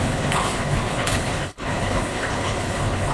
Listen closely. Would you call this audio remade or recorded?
remade